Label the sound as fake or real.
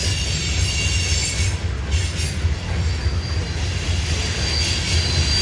real